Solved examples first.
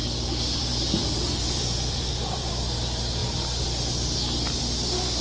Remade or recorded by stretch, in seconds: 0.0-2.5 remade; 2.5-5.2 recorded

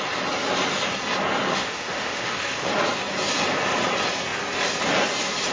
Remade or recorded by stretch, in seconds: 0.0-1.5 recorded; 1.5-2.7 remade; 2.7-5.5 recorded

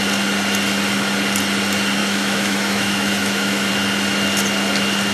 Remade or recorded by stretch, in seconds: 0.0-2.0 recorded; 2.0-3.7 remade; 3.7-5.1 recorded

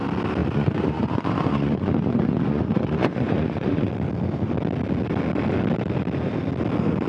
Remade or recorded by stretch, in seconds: 0.0-0.4 recorded; 0.4-3.9 remade; 3.9-7.1 recorded

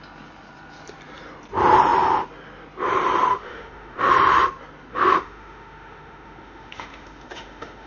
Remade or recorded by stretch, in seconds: 0.0-3.3 recorded; 3.3-4.1 remade; 4.1-4.9 recorded; 4.9-7.9 remade

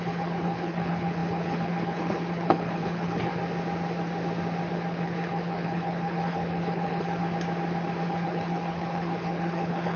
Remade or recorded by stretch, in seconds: 0.0-3.3 remade; 3.3-4.7 recorded; 4.7-7.2 remade; 7.2-8.0 recorded; 8.0-10.0 remade

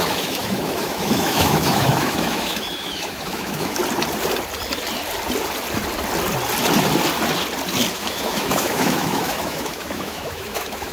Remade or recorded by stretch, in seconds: 0.0-3.8 remade; 3.8-7.9 recorded; 7.9-10.9 remade

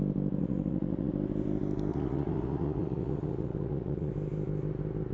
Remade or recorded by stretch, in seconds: 0.0-0.4 recorded; 0.4-1.1 remade; 1.1-1.9 recorded; 1.9-4.1 remade; 4.1-5.1 recorded